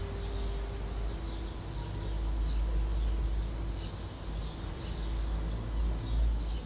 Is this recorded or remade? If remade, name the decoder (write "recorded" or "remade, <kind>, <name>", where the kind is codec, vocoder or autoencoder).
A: recorded